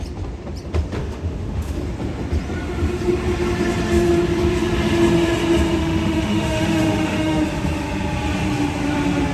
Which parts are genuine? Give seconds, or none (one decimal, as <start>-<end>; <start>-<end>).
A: 0.0-1.0; 1.8-5.8; 7.4-9.3